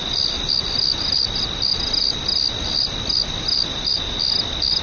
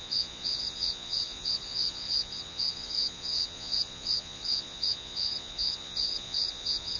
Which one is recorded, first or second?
first